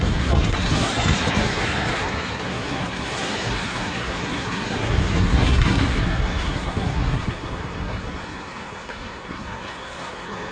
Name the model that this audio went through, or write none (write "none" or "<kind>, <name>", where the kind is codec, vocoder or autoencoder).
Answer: codec, SNAC